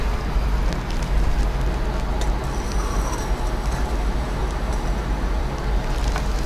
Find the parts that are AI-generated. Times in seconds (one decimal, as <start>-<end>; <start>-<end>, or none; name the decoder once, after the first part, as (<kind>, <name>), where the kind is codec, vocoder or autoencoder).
none